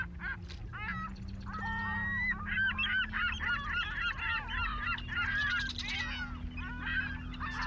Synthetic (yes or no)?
no